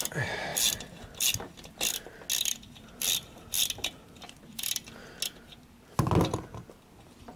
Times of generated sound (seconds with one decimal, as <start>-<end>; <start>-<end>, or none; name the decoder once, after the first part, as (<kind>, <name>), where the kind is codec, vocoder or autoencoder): none